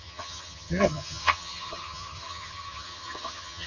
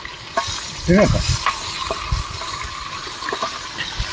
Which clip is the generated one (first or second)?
first